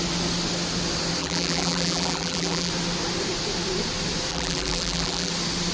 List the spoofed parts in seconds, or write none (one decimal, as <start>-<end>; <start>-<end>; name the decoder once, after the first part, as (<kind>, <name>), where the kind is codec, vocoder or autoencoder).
1.2-2.7 (vocoder, BigVGAN v2); 4.3-5.3